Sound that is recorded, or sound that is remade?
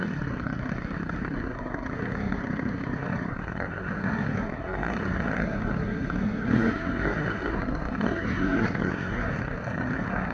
remade